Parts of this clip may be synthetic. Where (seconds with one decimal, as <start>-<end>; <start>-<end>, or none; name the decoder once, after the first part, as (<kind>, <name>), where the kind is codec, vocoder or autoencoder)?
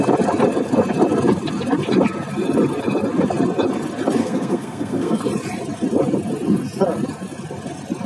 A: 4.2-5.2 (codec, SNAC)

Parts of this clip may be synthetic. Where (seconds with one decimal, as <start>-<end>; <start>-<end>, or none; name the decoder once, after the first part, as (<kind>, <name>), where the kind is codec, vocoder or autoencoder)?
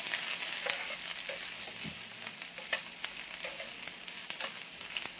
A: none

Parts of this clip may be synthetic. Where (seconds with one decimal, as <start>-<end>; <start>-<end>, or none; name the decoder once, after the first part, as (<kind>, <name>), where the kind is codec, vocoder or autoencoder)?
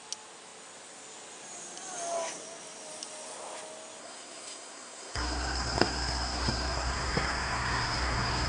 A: 4.0-8.5 (codec, SNAC)